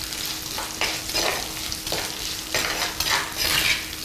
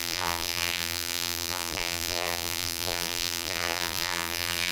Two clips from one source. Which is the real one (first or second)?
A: first